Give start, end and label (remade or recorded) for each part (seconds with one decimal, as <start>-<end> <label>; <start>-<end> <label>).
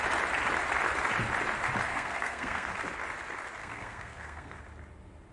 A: 0.0-1.9 recorded; 1.9-2.7 remade; 2.7-3.6 recorded; 3.6-4.6 remade; 4.6-5.3 recorded